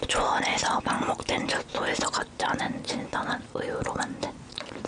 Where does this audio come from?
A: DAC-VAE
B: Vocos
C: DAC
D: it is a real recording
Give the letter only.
B